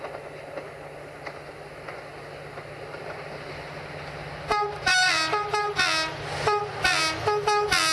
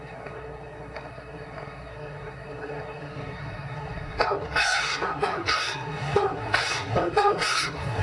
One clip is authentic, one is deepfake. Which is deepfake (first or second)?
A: second